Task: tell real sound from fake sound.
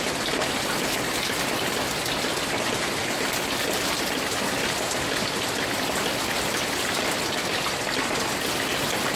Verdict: real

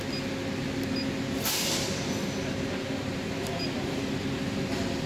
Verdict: real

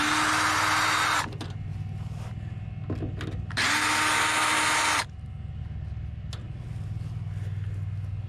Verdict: real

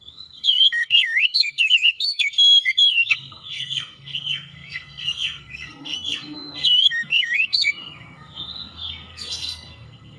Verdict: fake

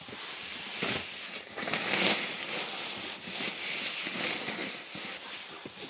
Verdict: real